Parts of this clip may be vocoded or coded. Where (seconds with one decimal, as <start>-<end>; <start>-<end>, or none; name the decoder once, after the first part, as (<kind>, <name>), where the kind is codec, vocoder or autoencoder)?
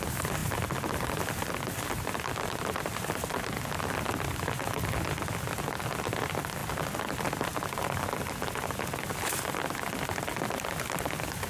none